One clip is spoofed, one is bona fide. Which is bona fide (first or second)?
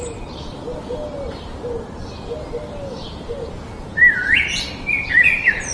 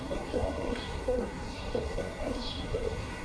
first